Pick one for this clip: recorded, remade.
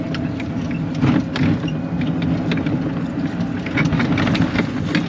recorded